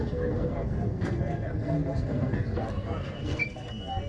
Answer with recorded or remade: remade